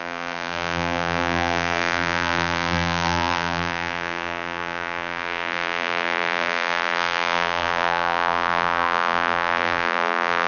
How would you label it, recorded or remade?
remade